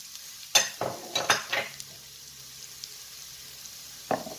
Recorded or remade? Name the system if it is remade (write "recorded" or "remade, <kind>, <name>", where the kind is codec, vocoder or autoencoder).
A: recorded